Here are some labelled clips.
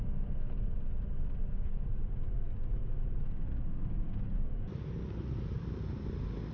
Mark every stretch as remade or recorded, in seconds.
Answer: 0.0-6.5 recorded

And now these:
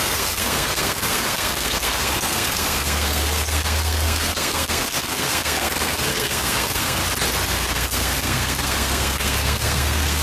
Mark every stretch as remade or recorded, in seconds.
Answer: 0.0-7.0 remade; 7.0-7.5 recorded; 7.5-10.2 remade

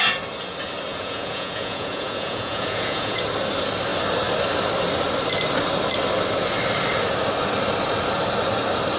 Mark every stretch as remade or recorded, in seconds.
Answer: 0.0-0.9 recorded; 0.9-3.2 remade; 3.2-9.0 recorded

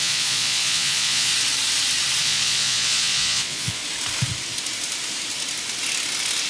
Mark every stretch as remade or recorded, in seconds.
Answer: 0.0-1.3 remade; 1.3-2.2 recorded; 2.2-3.8 remade; 3.8-6.5 recorded

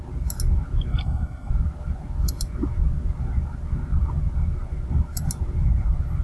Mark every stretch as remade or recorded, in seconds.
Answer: 0.0-0.9 recorded; 0.9-1.5 remade; 1.5-6.2 recorded